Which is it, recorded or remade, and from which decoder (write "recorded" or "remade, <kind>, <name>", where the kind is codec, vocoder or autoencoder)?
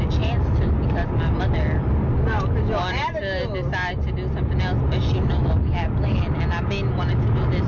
recorded